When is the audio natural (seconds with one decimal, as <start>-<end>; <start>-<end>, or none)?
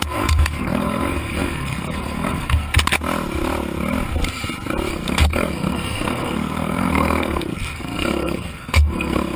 2.7-4.9